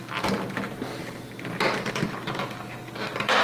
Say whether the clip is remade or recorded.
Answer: recorded